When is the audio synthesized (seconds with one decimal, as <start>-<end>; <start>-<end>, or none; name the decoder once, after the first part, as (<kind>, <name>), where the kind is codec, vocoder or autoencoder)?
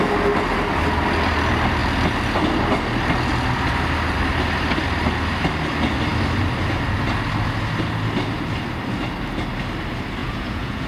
10.2-10.9 (vocoder, Vocos)